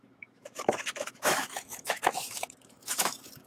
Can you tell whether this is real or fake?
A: fake